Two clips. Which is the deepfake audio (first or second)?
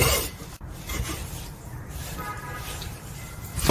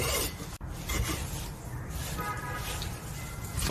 first